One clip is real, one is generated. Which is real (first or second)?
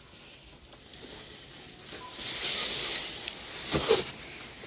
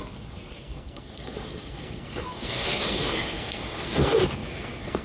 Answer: first